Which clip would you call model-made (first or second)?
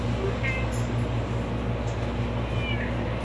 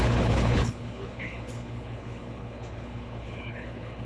second